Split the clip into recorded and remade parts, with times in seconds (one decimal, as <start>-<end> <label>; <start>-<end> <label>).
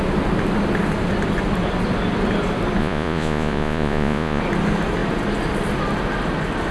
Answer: 0.0-2.8 recorded; 2.8-4.4 remade; 4.4-6.7 recorded